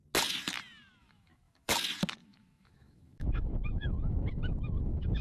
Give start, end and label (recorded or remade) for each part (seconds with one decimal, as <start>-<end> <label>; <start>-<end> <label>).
0.0-1.0 recorded; 1.0-1.7 remade; 1.7-2.2 recorded; 2.2-5.2 remade